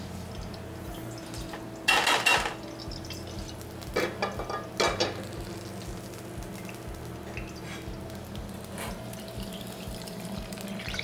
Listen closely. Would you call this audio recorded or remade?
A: recorded